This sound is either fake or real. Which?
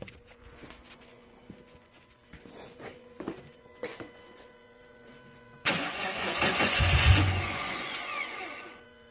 fake